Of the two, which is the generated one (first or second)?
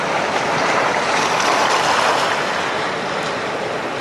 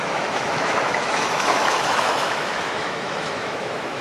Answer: second